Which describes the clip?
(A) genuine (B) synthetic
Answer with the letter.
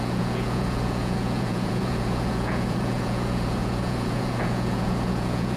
B